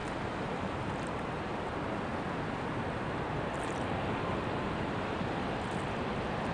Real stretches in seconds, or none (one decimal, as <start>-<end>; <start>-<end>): 0.9-2.1; 5.8-6.5